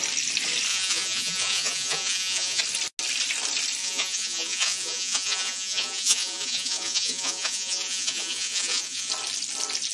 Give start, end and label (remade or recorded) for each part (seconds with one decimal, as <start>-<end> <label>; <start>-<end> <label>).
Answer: 0.0-0.7 recorded; 0.7-2.6 remade; 2.6-3.8 recorded; 3.8-9.1 remade; 9.1-9.9 recorded